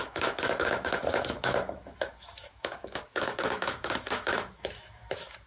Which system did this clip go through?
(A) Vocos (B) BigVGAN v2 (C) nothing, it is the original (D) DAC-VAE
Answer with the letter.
D